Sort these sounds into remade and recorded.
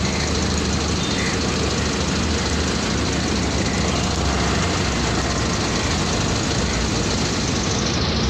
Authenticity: recorded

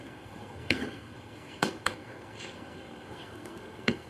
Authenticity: remade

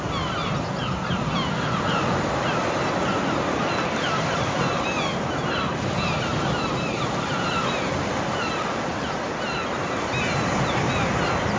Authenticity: recorded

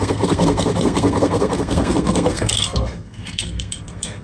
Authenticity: remade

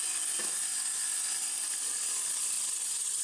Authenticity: recorded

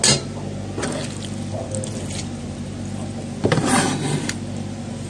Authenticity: recorded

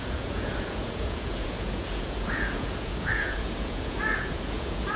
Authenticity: remade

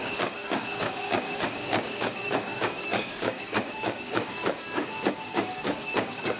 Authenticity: remade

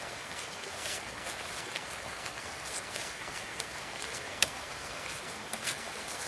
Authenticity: remade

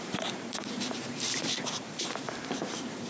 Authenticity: remade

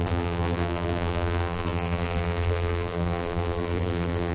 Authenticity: remade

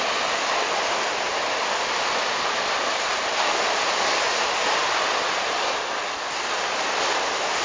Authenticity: recorded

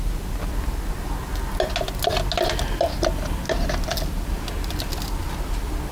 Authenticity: recorded